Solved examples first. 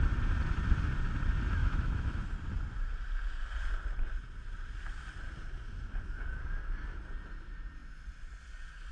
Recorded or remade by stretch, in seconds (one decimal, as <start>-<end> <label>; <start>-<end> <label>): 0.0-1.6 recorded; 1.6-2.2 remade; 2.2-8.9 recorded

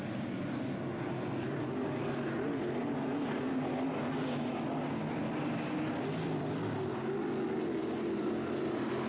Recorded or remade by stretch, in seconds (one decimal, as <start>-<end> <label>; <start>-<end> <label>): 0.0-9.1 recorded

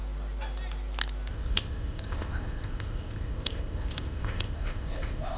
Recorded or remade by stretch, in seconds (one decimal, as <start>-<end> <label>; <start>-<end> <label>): 0.0-1.3 recorded; 1.3-5.4 remade